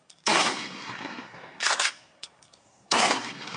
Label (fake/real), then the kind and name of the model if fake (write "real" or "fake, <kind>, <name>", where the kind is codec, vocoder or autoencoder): fake, codec, SNAC